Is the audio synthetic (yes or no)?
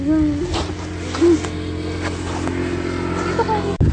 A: no